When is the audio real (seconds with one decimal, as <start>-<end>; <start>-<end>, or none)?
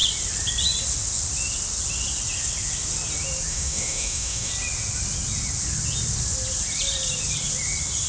0.0-3.5; 4.5-8.1